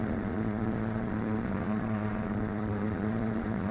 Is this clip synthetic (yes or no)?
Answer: yes